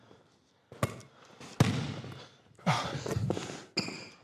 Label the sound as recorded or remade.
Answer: recorded